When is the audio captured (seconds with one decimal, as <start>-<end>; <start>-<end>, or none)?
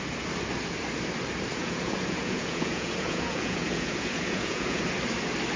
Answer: 0.0-1.5; 4.9-5.6